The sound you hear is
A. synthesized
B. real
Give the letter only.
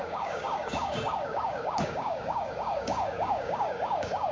A